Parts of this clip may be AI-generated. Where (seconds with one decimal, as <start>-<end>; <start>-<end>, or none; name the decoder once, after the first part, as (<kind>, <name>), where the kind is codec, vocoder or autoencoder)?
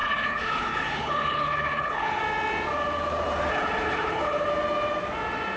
0.0-2.2 (codec, HILCodec); 3.5-4.5